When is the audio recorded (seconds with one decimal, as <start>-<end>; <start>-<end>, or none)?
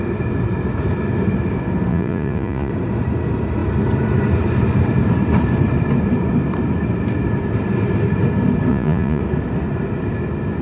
0.0-1.9; 2.7-8.7; 9.2-10.6